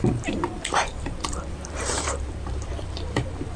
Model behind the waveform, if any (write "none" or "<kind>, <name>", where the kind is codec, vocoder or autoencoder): vocoder, BigVGAN v2